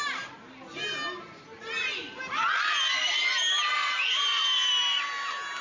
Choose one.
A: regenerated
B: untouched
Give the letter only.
B